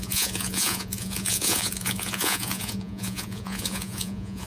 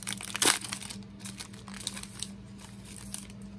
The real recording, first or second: second